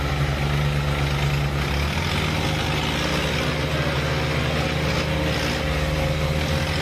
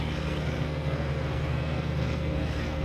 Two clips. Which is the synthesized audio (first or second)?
second